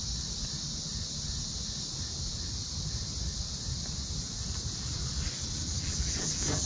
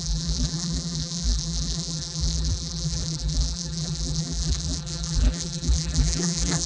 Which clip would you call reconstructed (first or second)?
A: second